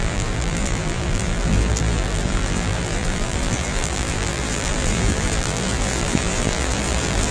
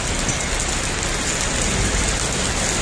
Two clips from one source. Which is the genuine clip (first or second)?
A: second